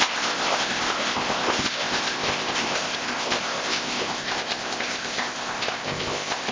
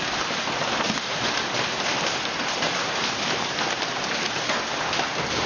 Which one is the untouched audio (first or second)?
second